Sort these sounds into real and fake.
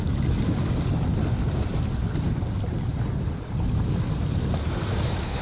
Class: real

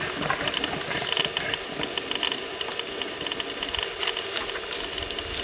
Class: real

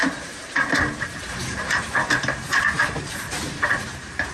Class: fake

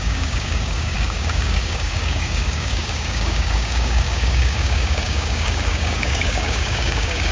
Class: fake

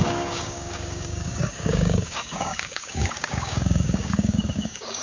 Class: fake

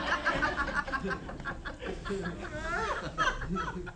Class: real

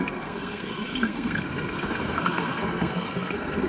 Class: fake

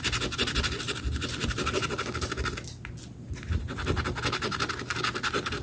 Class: real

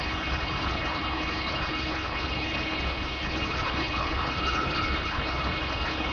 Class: fake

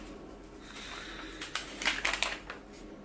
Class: real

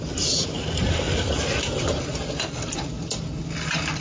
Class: real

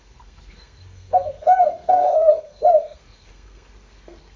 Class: fake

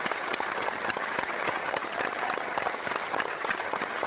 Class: fake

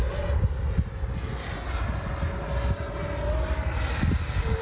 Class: real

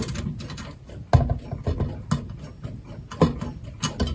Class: real